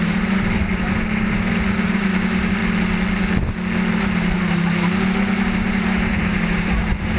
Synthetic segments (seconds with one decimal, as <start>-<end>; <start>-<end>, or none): 0.0-2.6; 3.9-7.2